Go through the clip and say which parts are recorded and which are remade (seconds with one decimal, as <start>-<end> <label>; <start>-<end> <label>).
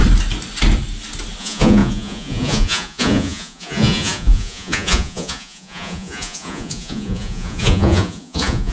0.0-1.4 recorded; 1.4-8.7 remade